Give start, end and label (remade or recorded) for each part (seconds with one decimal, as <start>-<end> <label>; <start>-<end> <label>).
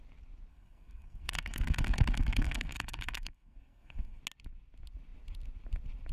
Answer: 0.0-0.5 recorded; 0.5-4.2 remade; 4.2-6.1 recorded